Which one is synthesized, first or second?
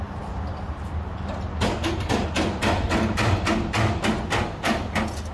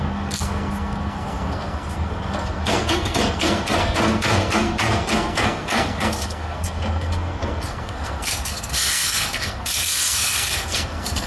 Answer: second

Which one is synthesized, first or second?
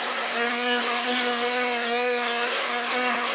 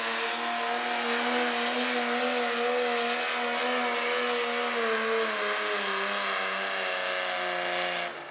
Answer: first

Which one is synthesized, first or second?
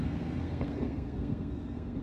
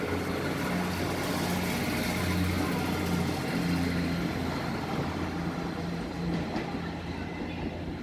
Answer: first